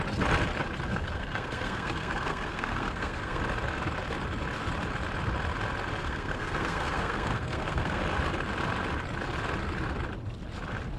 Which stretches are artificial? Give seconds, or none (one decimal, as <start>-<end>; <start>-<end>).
0.9-3.4; 6.0-8.0